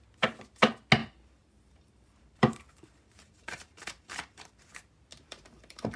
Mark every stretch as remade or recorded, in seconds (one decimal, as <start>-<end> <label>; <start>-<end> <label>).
0.0-1.0 recorded; 1.0-4.6 remade; 4.6-5.1 recorded; 5.1-6.0 remade